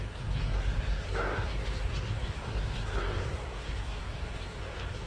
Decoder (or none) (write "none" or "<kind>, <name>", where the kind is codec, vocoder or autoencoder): codec, SNAC